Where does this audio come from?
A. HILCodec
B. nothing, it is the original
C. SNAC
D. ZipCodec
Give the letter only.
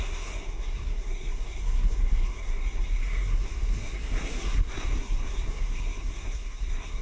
C